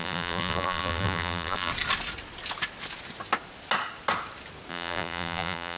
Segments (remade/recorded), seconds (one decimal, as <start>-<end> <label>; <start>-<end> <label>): 0.0-1.7 remade; 1.7-4.7 recorded; 4.7-5.8 remade